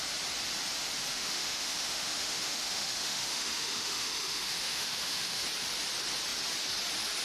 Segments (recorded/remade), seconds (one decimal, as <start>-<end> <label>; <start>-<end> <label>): 0.0-1.1 recorded; 1.1-5.4 remade; 5.4-7.2 recorded